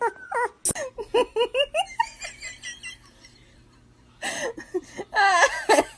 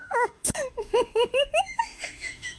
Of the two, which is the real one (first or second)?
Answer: first